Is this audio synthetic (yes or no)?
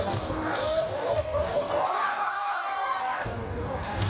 yes